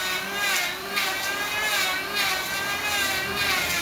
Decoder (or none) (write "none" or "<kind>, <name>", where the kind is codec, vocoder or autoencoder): none